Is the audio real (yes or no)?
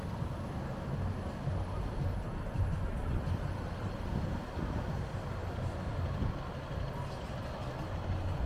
yes